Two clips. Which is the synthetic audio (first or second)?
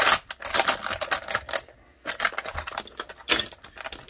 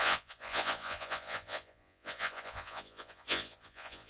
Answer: second